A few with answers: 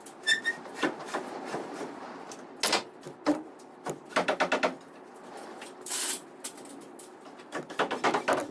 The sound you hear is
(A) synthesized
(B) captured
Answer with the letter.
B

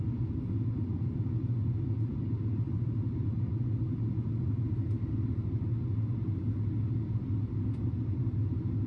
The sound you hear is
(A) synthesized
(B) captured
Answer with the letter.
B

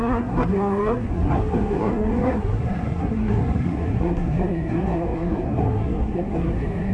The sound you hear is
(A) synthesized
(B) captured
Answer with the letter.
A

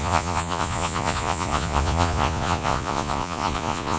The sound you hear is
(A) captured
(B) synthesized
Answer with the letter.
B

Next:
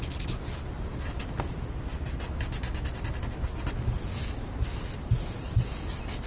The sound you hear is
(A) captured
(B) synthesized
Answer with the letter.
A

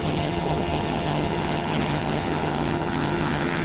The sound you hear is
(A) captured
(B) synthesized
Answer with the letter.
B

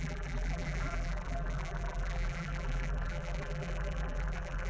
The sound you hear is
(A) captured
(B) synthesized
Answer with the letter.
B